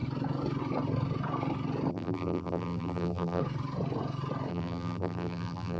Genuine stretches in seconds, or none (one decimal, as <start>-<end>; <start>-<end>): 0.0-1.9; 3.4-4.5